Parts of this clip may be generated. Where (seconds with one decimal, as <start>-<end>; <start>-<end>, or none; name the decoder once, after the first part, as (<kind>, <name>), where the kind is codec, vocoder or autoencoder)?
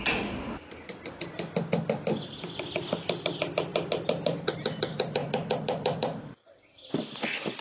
none